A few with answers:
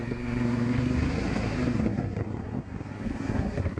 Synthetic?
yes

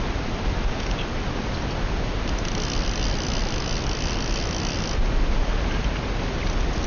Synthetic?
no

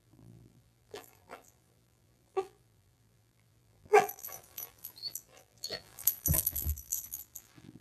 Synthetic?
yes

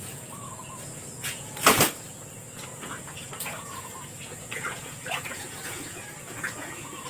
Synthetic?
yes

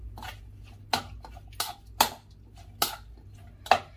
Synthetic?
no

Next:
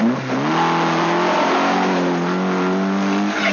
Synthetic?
no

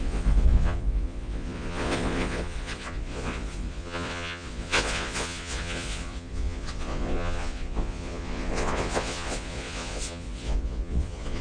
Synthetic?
yes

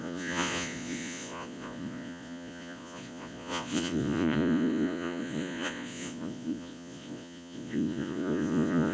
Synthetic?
yes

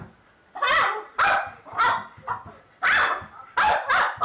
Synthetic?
no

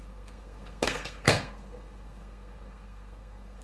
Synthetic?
yes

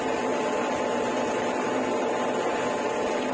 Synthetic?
no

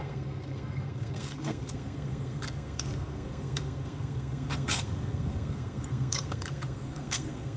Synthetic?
yes